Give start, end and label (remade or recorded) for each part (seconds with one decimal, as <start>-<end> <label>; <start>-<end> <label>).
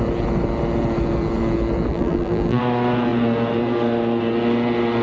0.0-1.9 recorded; 1.9-2.6 remade; 2.6-5.0 recorded